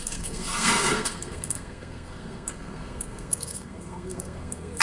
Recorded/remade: remade